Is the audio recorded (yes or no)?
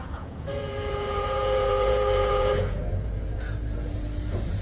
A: no